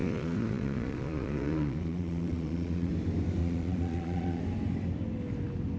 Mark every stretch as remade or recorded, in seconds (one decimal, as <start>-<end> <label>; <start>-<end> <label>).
0.0-2.9 remade; 2.9-3.4 recorded; 3.4-4.4 remade; 4.4-5.8 recorded